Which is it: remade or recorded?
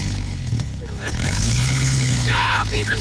remade